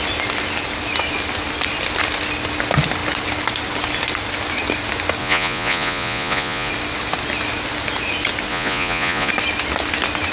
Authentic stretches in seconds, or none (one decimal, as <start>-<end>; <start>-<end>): 0.0-5.2; 6.7-8.5; 9.3-10.3